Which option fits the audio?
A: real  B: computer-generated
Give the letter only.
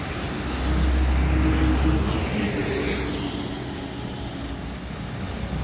A